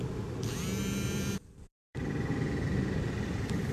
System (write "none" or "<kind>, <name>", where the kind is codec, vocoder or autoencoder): vocoder, BigVGAN v2